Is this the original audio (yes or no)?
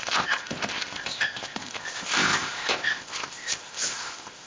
no